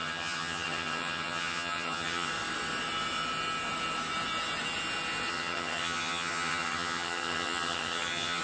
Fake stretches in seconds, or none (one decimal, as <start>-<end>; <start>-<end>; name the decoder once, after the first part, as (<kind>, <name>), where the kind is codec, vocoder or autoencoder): 0.0-2.3 (vocoder, HiFi-GAN); 5.3-8.4